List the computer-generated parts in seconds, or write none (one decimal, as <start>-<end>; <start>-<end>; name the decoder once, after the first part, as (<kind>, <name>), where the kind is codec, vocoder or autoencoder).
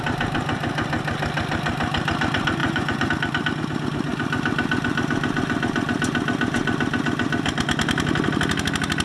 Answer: 2.6-3.1 (vocoder, Vocos)